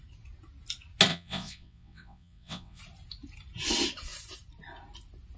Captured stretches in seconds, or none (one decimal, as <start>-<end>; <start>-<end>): 0.0-1.1; 2.8-5.4